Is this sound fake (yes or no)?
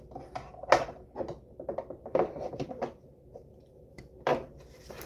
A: no